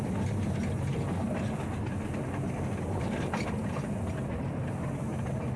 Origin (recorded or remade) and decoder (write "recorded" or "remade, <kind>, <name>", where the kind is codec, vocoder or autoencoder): recorded